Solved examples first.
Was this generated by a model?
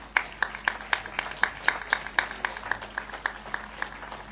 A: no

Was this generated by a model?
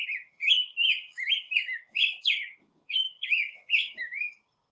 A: yes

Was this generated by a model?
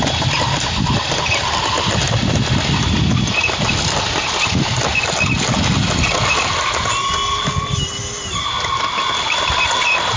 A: no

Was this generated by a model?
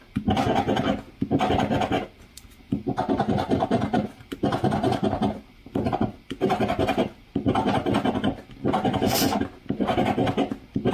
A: no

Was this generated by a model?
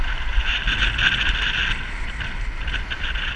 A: no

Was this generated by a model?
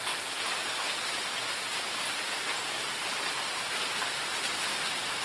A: yes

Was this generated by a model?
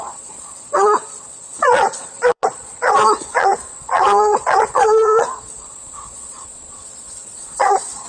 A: yes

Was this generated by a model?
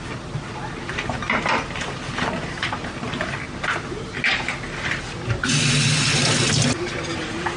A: no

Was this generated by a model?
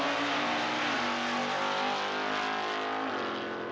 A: no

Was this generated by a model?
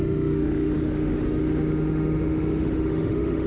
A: yes